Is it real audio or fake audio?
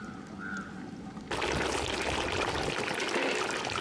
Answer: real